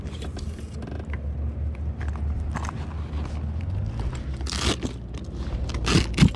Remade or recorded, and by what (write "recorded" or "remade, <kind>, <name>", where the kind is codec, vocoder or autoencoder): recorded